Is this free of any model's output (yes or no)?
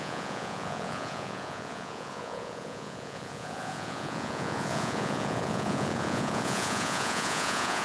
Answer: no